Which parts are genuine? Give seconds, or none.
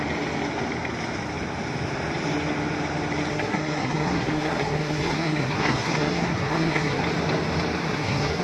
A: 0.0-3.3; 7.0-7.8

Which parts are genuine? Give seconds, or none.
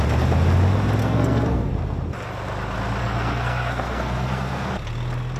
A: 0.0-1.0; 1.7-3.0; 4.7-5.4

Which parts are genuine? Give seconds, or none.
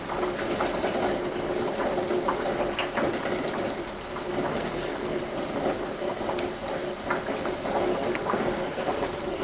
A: 0.0-4.5; 5.2-7.9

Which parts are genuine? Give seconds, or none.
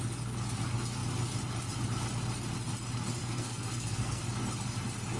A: 0.0-3.2; 4.2-5.2